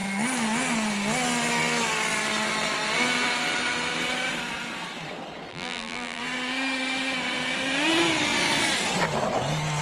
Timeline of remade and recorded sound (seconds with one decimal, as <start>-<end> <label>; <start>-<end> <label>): 0.0-5.5 recorded; 5.5-6.2 remade; 6.2-9.8 recorded